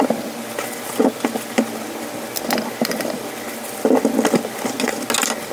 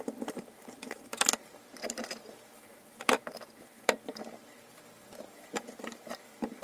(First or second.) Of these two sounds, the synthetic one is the second